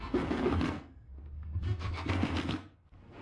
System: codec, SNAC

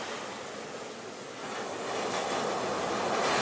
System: none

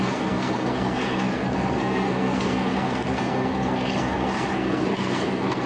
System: codec, SNAC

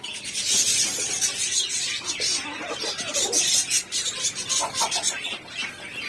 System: none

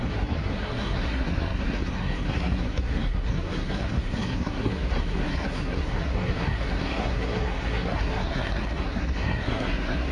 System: codec, SNAC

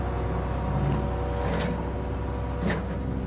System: none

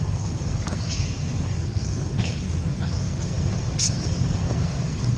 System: codec, SNAC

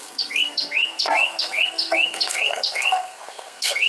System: codec, SNAC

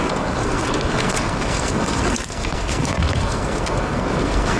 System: codec, SNAC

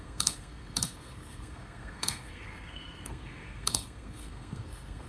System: codec, SNAC